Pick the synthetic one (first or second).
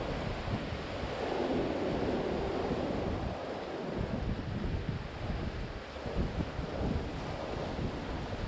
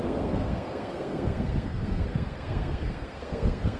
second